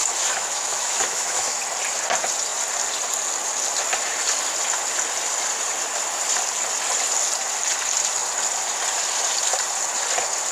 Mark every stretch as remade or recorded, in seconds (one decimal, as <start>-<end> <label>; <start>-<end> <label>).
0.0-1.6 remade; 1.6-10.5 recorded